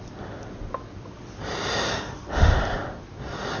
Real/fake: real